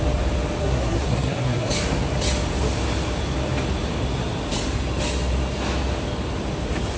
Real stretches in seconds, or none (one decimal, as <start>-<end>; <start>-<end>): 0.0-0.6; 1.7-7.0